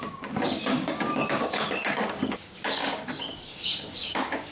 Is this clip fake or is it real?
fake